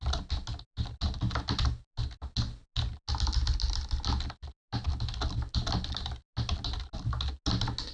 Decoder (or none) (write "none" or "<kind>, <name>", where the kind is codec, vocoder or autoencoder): none